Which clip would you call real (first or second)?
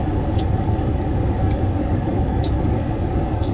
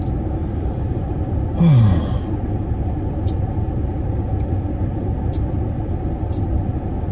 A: second